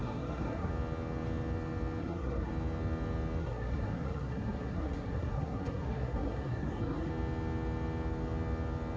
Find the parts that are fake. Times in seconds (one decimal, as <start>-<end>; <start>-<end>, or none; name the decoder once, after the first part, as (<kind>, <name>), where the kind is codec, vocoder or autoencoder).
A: 0.0-0.7 (codec, SNAC); 2.0-2.5; 3.4-7.1